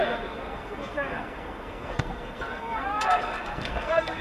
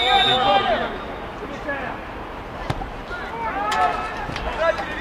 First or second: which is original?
second